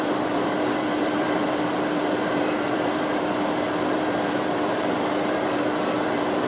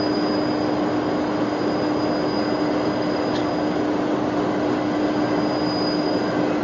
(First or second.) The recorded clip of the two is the second